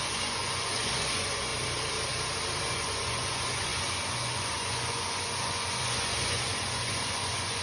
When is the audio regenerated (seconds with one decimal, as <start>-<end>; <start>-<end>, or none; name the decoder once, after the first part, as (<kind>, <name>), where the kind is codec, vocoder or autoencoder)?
0.0-1.5 (vocoder, Vocos); 2.6-7.6